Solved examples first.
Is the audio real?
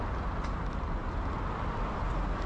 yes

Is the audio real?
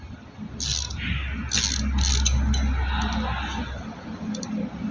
yes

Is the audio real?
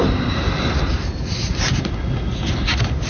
yes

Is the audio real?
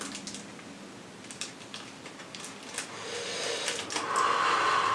yes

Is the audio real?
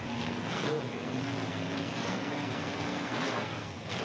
no